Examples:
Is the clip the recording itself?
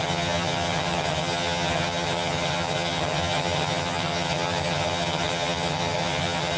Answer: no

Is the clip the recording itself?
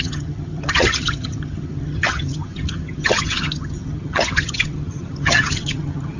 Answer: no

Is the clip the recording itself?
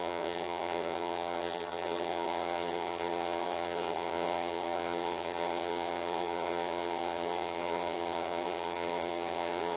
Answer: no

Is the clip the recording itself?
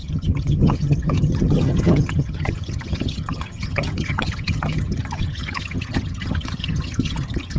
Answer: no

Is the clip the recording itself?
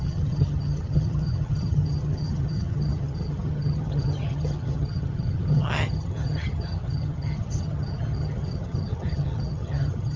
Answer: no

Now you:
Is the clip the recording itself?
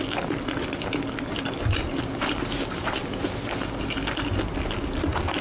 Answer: yes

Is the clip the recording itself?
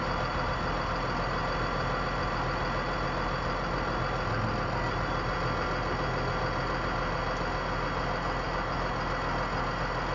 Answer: yes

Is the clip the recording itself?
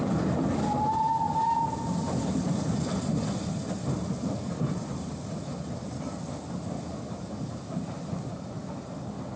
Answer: yes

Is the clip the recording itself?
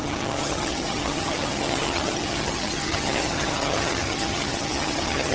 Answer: no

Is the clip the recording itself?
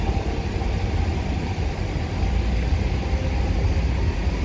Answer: yes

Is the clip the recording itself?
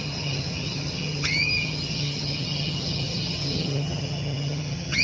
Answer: no